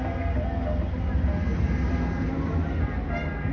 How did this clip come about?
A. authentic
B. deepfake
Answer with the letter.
A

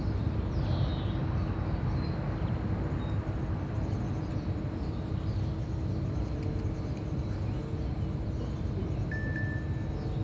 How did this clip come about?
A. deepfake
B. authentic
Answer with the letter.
B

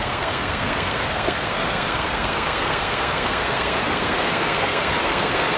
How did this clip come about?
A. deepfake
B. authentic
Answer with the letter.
A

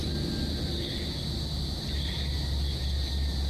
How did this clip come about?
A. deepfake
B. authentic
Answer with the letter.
B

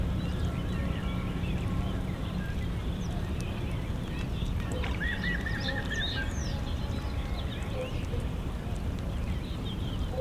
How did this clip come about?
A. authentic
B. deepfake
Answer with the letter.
B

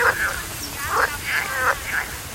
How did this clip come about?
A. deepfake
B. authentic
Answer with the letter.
B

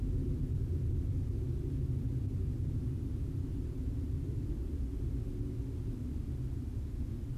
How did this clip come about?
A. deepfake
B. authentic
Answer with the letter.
B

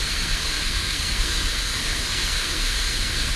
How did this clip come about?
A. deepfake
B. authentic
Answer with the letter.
A